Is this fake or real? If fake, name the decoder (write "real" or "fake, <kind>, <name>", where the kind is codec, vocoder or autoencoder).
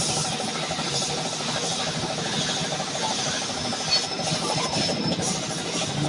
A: real